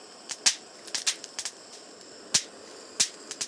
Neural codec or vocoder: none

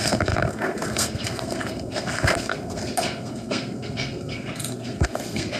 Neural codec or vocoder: codec, SNAC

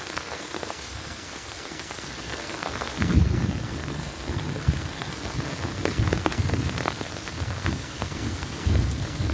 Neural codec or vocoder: codec, SNAC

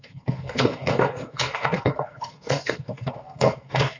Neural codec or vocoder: codec, SNAC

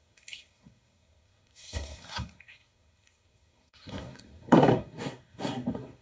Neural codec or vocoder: codec, SNAC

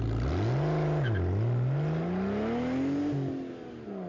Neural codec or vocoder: none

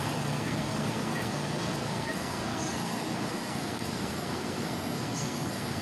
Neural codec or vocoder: codec, SNAC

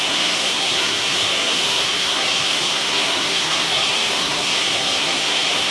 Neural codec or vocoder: codec, SNAC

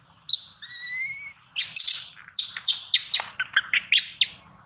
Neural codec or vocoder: none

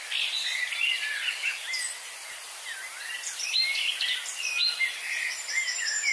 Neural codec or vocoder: none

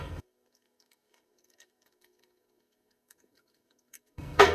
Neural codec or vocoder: codec, SNAC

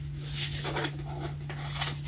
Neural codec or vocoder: none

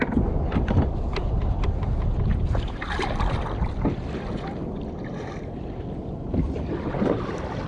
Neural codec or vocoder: none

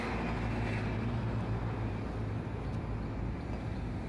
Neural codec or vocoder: none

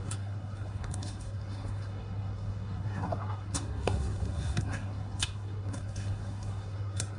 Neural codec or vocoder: codec, SNAC